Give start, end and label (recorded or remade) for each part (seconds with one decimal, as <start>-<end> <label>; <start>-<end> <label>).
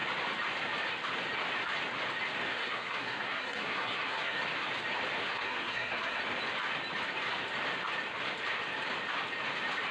0.0-2.5 recorded; 2.5-4.4 remade; 4.4-5.2 recorded; 5.2-6.2 remade; 6.2-9.9 recorded